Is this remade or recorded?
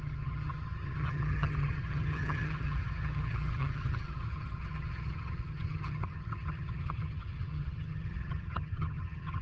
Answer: remade